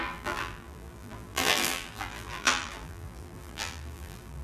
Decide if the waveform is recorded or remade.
remade